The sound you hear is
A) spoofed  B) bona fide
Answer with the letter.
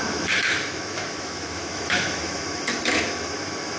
A